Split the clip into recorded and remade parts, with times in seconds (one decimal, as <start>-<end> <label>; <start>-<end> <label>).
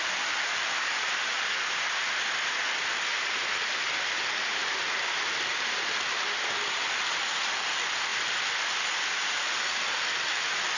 0.0-3.4 recorded; 3.4-5.8 remade; 5.8-8.1 recorded; 8.1-9.6 remade; 9.6-10.8 recorded